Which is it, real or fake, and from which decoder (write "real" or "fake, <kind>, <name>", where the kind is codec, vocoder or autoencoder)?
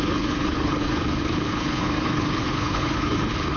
fake, codec, HILCodec